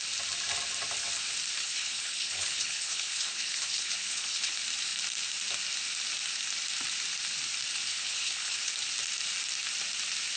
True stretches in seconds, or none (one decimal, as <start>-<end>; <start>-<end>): 0.0-1.6; 4.5-7.9; 8.7-10.4